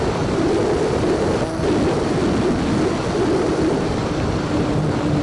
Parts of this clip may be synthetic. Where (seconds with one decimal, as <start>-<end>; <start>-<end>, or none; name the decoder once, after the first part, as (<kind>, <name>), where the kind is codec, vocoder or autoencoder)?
0.0-0.6 (vocoder, BigVGAN v2); 3.7-5.2